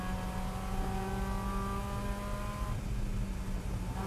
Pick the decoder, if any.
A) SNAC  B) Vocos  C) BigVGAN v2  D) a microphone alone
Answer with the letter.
D